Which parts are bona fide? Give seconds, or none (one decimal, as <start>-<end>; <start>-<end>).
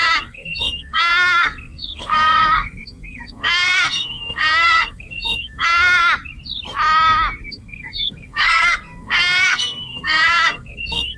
6.0-7.5